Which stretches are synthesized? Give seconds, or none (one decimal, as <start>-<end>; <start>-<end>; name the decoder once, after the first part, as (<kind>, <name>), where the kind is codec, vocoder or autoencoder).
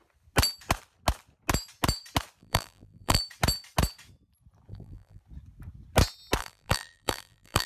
2.4-3.2 (vocoder, BigVGAN v2); 4.7-5.2; 6.4-7.7